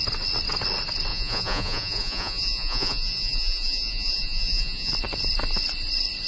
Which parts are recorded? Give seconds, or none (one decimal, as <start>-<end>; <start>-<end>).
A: 0.0-1.1; 4.9-6.3